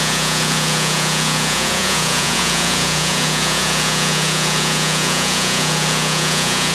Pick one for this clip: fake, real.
fake